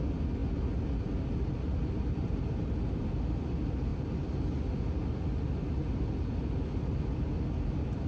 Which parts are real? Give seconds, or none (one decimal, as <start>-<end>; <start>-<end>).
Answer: 0.0-8.1